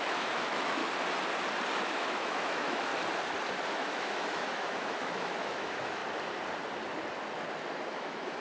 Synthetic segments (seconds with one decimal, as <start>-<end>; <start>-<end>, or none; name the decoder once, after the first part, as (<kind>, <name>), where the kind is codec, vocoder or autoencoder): 0.0-0.8 (autoencoder, DAC-VAE); 1.8-2.9; 3.7-6.0; 7.9-8.4